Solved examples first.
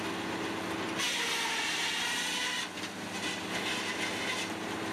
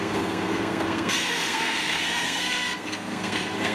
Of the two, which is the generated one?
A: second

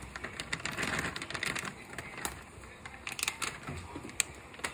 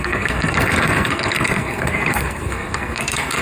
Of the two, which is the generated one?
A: second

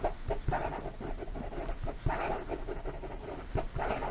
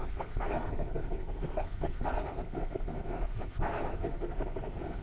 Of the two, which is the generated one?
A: second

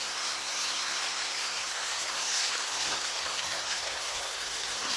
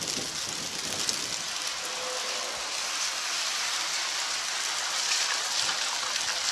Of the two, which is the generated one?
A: first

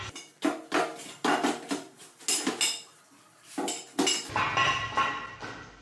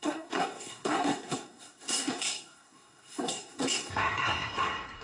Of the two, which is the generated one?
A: second